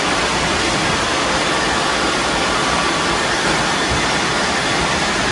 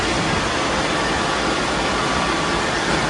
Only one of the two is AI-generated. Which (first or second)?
first